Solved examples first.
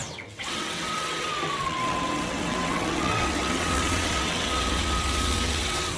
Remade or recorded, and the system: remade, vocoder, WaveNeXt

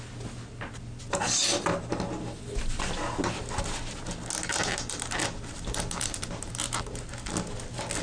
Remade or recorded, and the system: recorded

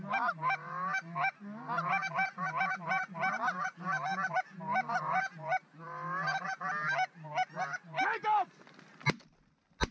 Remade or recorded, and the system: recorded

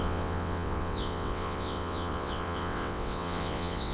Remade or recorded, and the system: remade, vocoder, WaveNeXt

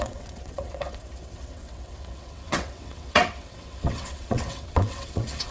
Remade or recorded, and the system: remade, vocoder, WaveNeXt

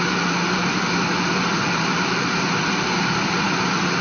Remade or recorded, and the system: recorded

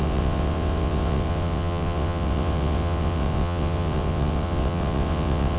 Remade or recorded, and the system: remade, vocoder, WaveNeXt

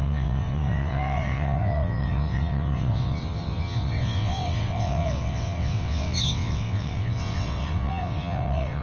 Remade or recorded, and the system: remade, vocoder, WaveNeXt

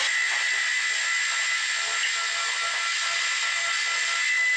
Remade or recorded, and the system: recorded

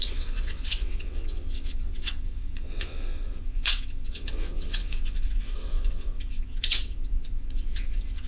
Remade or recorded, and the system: remade, vocoder, WaveNeXt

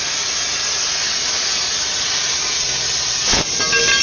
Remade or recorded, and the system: recorded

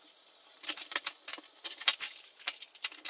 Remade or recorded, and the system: recorded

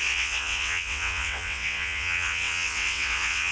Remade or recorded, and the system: remade, vocoder, WaveNeXt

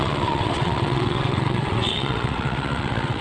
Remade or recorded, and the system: remade, vocoder, WaveNeXt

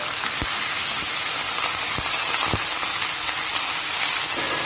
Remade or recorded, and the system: recorded